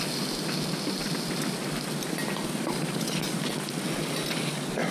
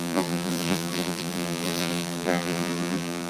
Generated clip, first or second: second